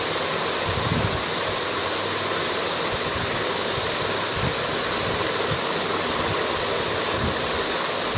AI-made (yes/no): no